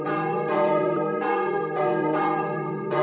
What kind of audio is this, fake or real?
fake